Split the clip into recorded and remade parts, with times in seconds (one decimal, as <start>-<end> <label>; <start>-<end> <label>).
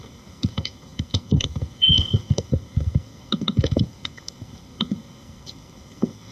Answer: 0.0-6.3 remade